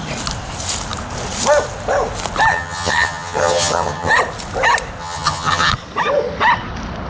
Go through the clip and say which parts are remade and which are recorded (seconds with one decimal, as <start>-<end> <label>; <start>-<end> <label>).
0.0-2.5 recorded; 2.5-4.1 remade; 4.1-5.0 recorded; 5.0-5.7 remade; 5.7-7.1 recorded